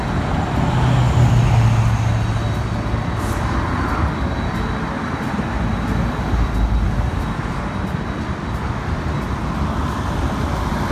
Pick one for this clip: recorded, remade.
recorded